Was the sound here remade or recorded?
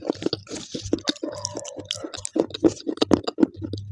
recorded